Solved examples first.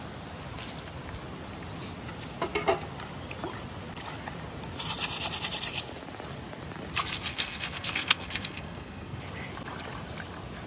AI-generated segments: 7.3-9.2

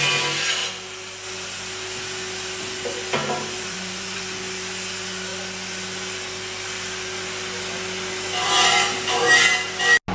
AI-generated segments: 3.2-4.2